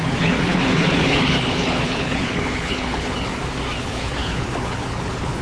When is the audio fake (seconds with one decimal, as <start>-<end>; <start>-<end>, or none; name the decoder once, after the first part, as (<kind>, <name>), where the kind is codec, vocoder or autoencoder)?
0.0-3.3 (codec, HILCodec); 3.8-5.4